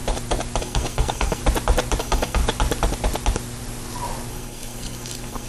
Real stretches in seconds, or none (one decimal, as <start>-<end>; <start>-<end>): 0.0-0.6; 1.4-2.0; 2.4-4.3